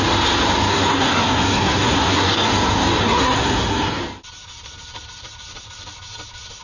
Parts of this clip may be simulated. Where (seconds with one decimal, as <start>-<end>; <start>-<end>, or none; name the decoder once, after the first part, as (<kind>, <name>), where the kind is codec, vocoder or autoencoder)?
0.7-2.5 (codec, SNAC); 3.0-4.0